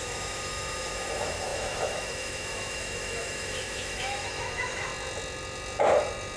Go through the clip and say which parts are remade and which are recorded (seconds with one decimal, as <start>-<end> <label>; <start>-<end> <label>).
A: 0.0-4.9 remade; 4.9-6.4 recorded